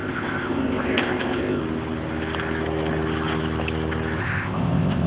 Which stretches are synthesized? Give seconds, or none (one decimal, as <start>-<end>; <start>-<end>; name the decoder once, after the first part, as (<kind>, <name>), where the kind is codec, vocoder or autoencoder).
0.0-1.6 (codec, ZipCodec); 4.2-5.1

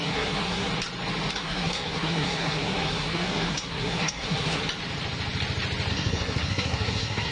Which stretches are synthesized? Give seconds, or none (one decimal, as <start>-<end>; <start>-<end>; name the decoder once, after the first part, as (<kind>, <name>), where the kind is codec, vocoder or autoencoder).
0.0-0.7 (codec, SNAC); 1.3-4.6; 5.9-7.3

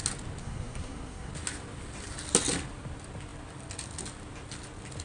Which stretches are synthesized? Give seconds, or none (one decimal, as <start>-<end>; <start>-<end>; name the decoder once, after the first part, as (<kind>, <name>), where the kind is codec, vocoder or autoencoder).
0.4-1.3 (codec, SNAC)

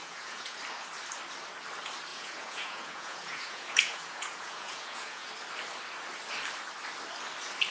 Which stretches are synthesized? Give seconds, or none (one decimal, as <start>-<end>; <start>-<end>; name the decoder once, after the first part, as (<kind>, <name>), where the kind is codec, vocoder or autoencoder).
0.0-0.6 (vocoder, Vocos); 2.1-5.3

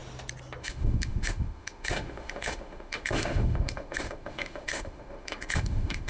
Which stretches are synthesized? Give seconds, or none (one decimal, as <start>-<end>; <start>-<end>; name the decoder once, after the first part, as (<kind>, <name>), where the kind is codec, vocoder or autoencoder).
0.6-6.1 (autoencoder, DAC-VAE)

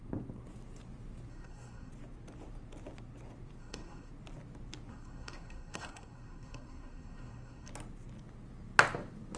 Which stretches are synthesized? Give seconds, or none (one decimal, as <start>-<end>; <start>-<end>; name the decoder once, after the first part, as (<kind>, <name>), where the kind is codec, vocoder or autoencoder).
1.3-1.9 (codec, SNAC); 3.6-4.1; 4.9-7.7